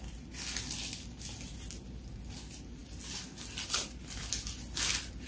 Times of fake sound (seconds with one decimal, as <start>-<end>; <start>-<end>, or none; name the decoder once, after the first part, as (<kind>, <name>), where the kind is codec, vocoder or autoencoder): none